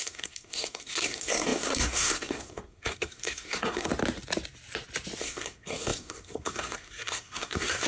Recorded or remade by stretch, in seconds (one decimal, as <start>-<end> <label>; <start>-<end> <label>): 0.0-3.9 remade; 3.9-5.2 recorded; 5.2-7.9 remade